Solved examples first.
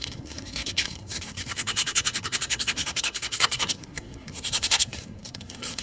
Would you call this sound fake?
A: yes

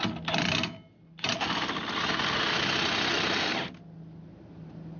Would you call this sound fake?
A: no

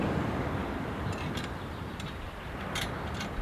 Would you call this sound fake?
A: yes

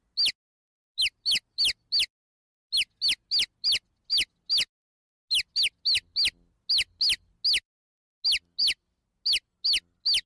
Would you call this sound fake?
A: no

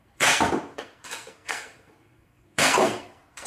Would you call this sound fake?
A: yes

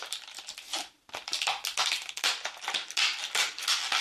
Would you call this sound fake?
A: no